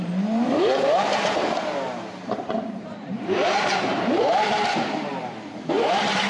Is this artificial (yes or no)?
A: yes